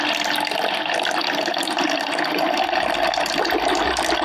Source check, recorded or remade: recorded